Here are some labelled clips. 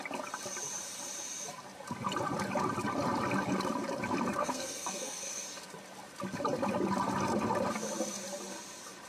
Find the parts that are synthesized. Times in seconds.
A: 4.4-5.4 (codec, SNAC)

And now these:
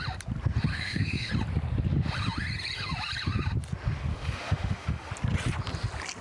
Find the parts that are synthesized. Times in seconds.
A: 0.7-1.3 (autoencoder, DAC-VAE); 4.1-5.1

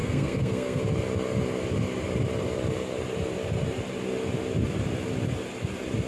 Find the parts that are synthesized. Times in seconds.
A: 0.0-0.8 (codec, SNAC)

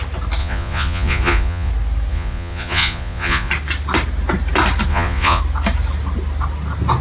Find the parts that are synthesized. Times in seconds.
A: 0.4-1.7 (vocoder, Vocos); 2.1-3.5; 4.9-5.4

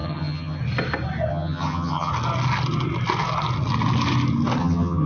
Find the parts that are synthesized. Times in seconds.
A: 0.0-0.6 (vocoder, HiFi-GAN); 1.3-2.1; 4.6-5.1

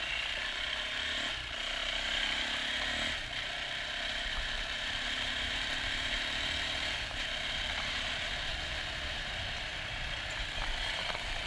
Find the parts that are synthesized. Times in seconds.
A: 0.0-11.5 (vocoder, BigVGAN v2)

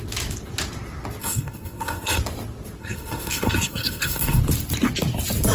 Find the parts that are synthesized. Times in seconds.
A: 1.2-2.2 (codec, SNAC); 2.8-4.4

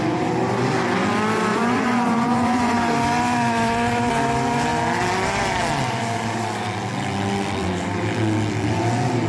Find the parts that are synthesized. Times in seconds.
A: 1.5-2.7 (vocoder, Vocos)